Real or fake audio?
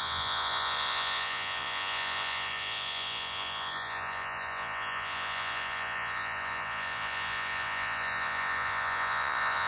fake